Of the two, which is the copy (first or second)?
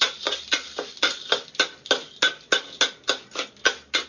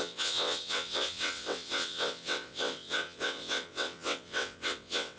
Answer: second